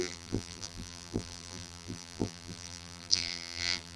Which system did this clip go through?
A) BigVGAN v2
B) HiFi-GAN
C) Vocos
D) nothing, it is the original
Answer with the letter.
A